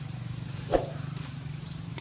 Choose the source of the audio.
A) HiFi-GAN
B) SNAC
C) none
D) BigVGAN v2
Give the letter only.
D